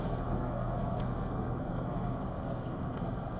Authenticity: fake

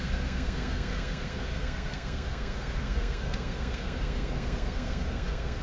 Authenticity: fake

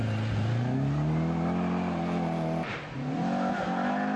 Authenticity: real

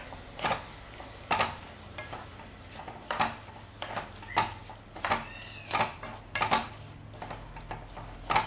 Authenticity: real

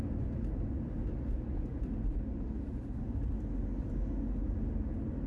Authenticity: real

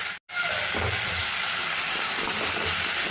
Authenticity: real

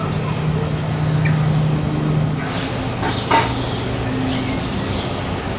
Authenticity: real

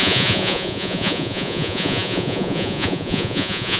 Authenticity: fake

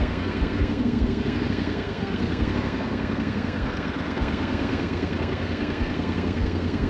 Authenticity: fake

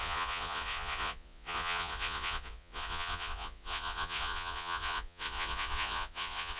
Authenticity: fake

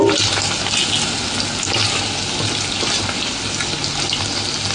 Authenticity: real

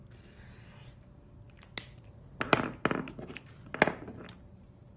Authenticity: real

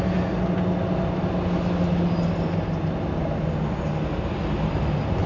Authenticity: real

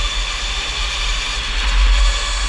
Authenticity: real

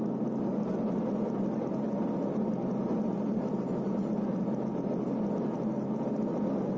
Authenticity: real